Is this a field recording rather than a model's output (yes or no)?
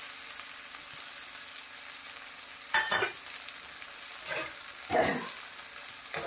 yes